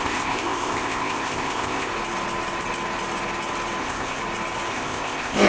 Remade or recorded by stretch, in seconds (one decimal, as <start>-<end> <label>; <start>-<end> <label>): 0.0-1.9 remade; 1.9-3.8 recorded; 3.8-4.2 remade; 4.2-4.7 recorded; 4.7-5.5 remade